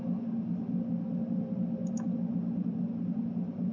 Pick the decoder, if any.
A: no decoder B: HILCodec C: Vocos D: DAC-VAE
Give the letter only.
A